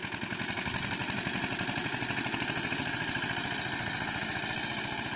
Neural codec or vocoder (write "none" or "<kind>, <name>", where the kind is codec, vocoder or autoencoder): none